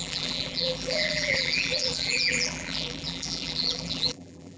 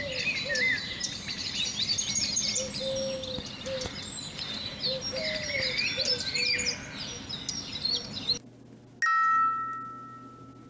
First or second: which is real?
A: second